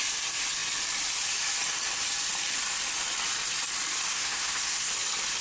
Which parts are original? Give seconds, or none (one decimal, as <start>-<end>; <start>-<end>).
0.0-4.1; 4.9-5.4